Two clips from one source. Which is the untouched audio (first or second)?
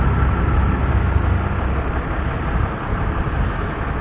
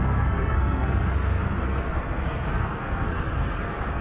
first